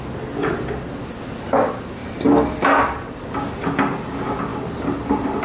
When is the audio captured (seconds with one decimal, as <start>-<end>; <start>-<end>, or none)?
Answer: 0.0-2.0; 2.8-5.4